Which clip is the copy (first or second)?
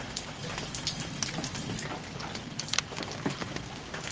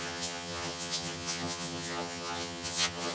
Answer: second